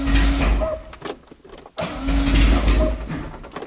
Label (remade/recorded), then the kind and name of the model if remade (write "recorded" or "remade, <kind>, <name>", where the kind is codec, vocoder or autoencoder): recorded